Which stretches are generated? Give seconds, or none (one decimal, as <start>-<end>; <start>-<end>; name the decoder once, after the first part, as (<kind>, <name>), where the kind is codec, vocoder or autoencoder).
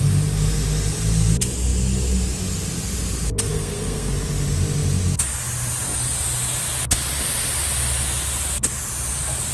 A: 3.5-4.1 (codec, SNAC)